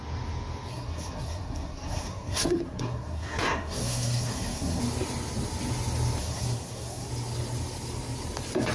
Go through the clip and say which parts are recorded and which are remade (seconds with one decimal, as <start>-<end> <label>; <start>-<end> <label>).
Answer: 0.0-0.7 recorded; 0.7-4.8 remade; 4.8-6.2 recorded; 6.2-7.1 remade; 7.1-8.7 recorded